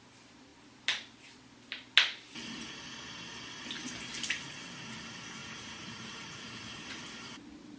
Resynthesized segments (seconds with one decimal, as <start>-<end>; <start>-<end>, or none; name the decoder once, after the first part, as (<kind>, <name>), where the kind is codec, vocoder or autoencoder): 5.4-7.0 (vocoder, Vocos)